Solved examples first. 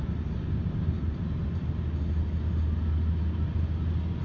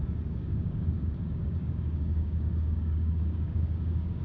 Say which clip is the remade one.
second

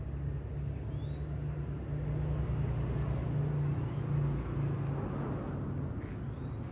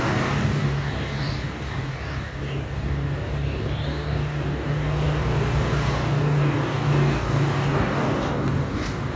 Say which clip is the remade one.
second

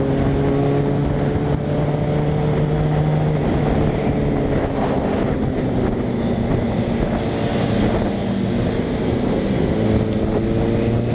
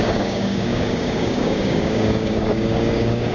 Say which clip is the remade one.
second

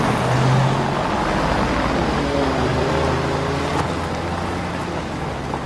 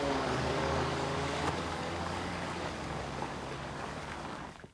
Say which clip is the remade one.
second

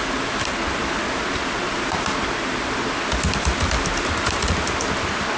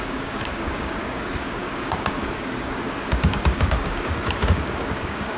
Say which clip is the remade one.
second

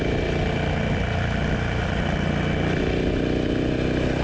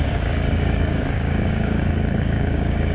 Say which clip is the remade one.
second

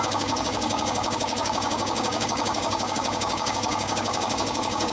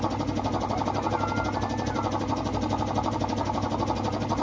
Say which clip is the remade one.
first